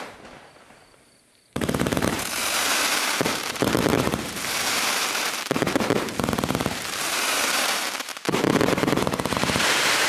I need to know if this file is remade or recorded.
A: remade